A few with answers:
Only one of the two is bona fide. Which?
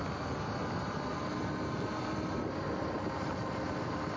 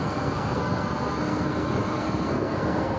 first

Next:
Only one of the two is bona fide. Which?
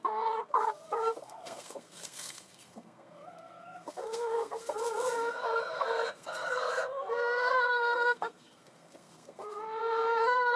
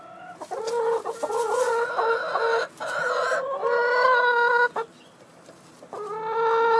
second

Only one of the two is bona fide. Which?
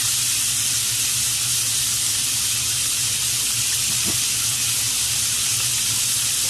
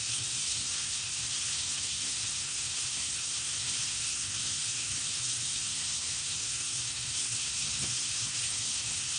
first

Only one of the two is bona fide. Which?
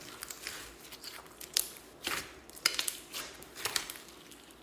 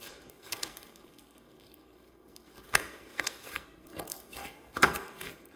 first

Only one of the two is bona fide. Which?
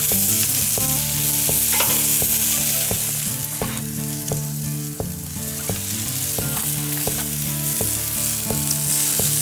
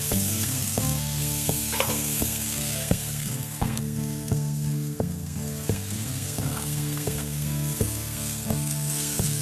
first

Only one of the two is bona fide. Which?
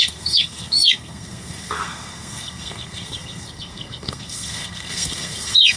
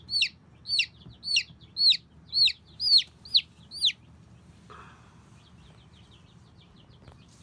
second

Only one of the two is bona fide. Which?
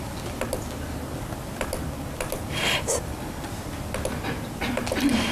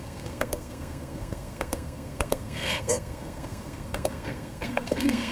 first